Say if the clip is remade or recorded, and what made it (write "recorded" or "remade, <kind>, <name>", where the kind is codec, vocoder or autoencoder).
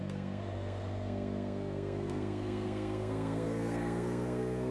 remade, codec, SNAC